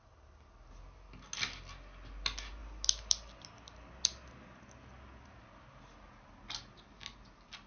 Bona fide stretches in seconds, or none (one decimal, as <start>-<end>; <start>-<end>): 0.0-7.7